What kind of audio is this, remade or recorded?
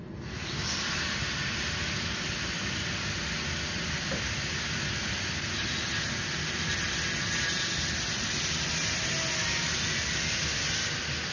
recorded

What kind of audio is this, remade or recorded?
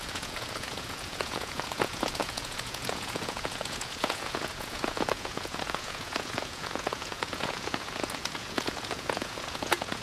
remade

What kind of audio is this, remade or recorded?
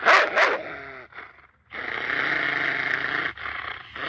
recorded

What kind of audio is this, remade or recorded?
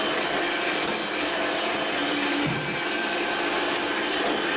recorded